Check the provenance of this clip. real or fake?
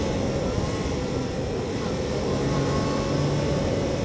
real